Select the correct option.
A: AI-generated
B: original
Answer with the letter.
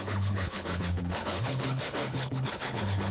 A